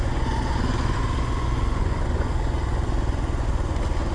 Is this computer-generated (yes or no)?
yes